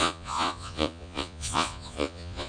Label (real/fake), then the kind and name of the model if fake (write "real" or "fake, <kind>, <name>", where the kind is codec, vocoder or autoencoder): fake, vocoder, Vocos